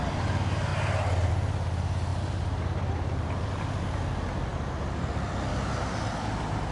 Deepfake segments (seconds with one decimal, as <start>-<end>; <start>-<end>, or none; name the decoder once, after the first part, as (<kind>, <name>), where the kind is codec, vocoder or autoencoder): 2.1-3.5 (vocoder, BigVGAN v2)